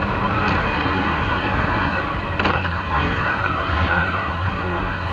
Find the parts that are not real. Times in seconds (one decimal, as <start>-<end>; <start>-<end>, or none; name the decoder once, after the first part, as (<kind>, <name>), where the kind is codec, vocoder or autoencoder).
0.6-2.0 (codec, SNAC); 2.5-5.1